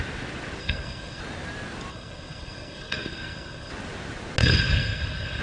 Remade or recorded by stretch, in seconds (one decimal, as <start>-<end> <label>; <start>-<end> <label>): 0.0-0.6 recorded; 0.6-1.2 remade; 1.2-1.9 recorded; 1.9-3.7 remade; 3.7-4.4 recorded; 4.4-5.4 remade